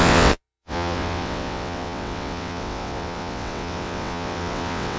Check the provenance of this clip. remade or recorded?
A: remade